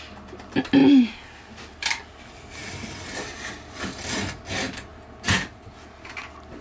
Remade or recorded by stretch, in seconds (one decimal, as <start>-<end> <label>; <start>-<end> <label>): 0.0-6.6 recorded